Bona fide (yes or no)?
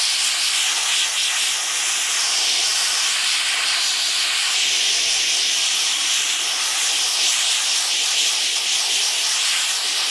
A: yes